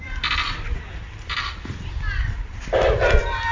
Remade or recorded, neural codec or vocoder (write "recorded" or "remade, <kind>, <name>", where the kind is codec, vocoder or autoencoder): recorded